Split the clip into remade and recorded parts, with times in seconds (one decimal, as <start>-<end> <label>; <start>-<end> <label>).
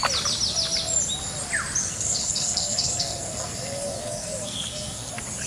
0.0-1.8 recorded; 1.8-5.1 remade; 5.1-5.5 recorded